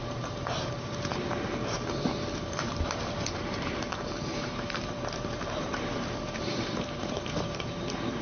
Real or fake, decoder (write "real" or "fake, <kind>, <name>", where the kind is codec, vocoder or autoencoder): fake, vocoder, BigVGAN v2